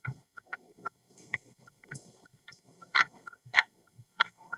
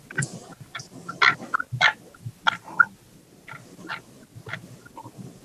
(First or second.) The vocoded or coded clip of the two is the first